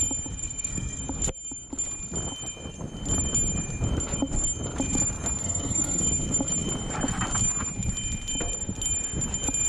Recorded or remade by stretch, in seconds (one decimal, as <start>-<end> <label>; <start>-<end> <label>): 0.0-0.4 recorded; 0.4-1.0 remade; 1.0-5.4 recorded; 5.4-6.0 remade; 6.0-9.7 recorded